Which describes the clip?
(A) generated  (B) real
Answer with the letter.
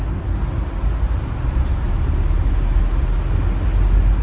B